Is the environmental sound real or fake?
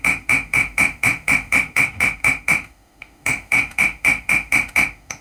fake